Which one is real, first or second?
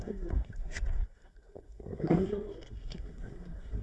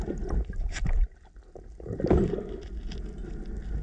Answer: second